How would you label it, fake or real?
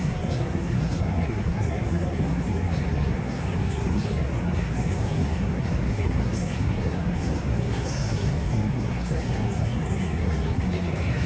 fake